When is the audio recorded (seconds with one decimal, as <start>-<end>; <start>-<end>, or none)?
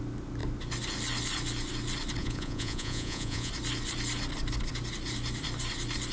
0.0-2.2; 3.5-6.1